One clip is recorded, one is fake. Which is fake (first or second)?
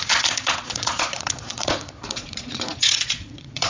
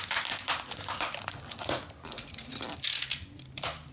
first